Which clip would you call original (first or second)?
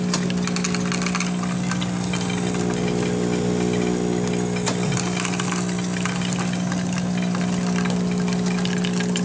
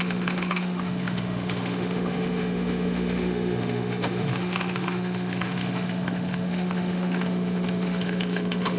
first